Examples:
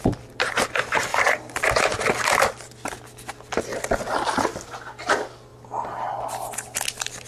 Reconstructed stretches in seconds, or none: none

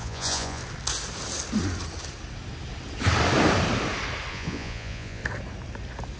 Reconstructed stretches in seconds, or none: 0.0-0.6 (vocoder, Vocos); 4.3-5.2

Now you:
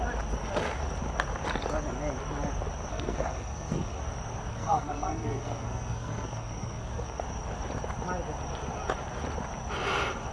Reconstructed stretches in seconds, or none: 2.9-4.0 (codec, SNAC); 4.5-7.2

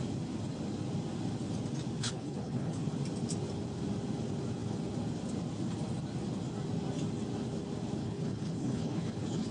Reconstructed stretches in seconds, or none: 2.0-2.9 (codec, HILCodec); 8.0-9.5

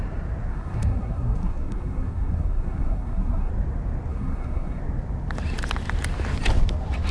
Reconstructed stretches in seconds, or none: 0.5-3.5 (codec, SNAC); 4.1-4.8

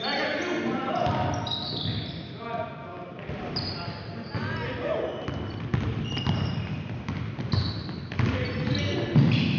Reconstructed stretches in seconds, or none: none

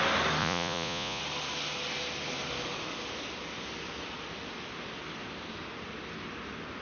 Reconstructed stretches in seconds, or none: 0.4-1.2 (vocoder, Vocos)